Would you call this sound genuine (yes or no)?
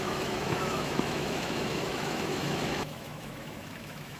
no